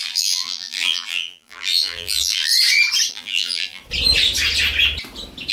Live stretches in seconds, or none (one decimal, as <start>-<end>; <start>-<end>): 2.5-3.1; 3.8-5.5